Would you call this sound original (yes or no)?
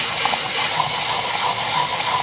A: yes